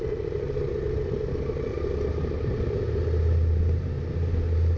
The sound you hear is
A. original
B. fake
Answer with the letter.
A